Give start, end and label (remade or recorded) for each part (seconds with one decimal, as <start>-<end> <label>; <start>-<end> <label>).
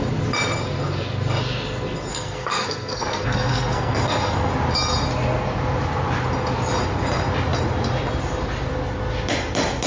0.0-2.1 recorded; 2.1-4.5 remade; 4.5-9.9 recorded